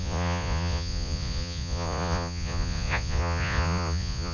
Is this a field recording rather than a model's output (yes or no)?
no